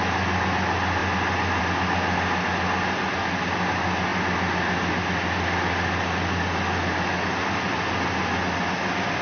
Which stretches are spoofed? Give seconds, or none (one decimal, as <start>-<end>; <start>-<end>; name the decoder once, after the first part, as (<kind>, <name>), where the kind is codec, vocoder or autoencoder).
none